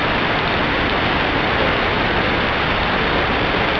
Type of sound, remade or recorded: recorded